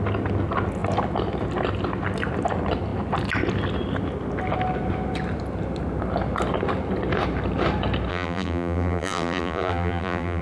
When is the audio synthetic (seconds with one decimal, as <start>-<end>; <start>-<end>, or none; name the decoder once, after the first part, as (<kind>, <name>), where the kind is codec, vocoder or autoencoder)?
8.1-10.4 (vocoder, BigVGAN v2)

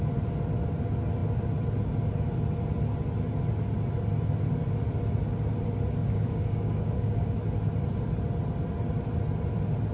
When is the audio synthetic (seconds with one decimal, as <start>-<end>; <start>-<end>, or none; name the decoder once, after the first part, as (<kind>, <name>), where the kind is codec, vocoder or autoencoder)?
6.0-7.3 (codec, DAC)

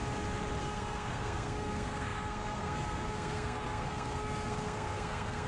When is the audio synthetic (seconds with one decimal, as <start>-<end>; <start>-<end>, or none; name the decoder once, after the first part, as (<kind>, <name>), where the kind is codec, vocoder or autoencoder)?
0.6-5.5 (codec, SNAC)

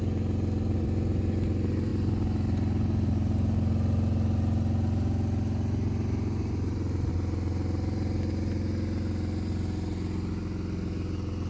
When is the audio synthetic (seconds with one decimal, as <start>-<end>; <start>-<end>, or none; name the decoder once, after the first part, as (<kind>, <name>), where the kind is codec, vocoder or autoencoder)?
none

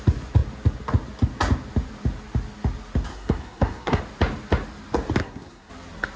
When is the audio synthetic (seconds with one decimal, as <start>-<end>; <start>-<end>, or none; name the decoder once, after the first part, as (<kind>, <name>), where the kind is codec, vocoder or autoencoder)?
3.1-4.0 (codec, SNAC); 5.2-5.7

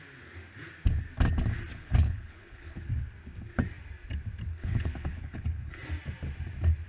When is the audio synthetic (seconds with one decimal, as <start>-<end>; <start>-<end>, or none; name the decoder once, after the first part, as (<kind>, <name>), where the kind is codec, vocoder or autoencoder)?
1.7-2.8 (codec, HILCodec); 4.5-5.8

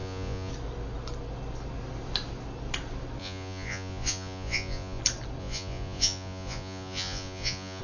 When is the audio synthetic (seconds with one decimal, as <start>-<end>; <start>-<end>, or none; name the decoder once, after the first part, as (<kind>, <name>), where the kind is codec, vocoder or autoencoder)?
0.0-0.5 (vocoder, Vocos); 3.2-5.0; 5.4-7.8